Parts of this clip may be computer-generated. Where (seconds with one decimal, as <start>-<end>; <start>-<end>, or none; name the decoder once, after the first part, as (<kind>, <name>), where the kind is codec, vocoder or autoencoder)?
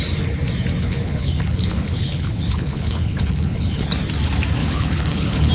0.8-3.9 (codec, HILCodec); 4.6-5.5